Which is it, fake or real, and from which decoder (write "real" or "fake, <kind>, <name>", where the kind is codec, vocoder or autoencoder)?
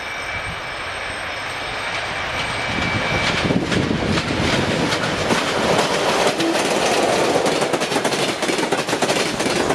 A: real